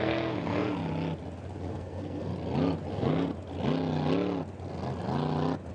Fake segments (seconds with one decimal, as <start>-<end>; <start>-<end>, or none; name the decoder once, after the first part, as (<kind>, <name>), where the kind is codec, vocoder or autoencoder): 0.0-0.8 (codec, SNAC); 1.6-2.3; 2.9-3.3